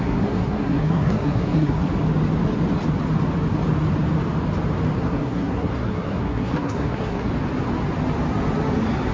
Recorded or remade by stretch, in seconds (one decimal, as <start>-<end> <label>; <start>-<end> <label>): 0.0-1.9 remade; 1.9-5.0 recorded; 5.0-7.3 remade; 7.3-9.1 recorded